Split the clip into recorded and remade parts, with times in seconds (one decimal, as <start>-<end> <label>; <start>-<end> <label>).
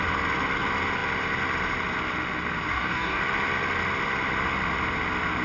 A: 0.0-2.7 recorded; 2.7-3.2 remade; 3.2-5.4 recorded